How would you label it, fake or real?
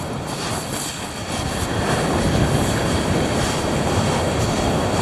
real